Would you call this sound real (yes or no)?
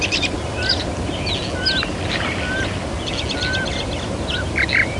yes